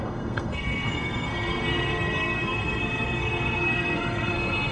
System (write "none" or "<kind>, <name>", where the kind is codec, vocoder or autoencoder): codec, SNAC